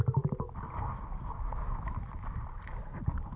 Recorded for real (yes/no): yes